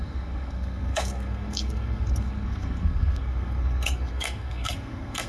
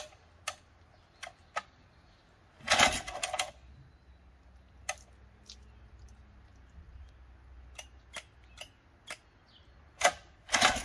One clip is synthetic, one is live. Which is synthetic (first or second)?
first